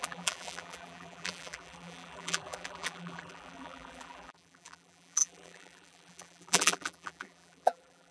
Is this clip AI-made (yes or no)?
yes